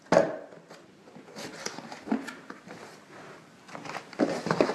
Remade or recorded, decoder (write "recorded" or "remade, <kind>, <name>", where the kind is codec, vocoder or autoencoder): recorded